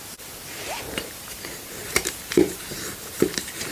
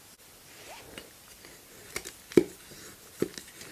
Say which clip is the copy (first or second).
first